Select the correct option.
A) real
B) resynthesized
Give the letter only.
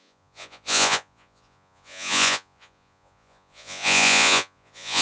B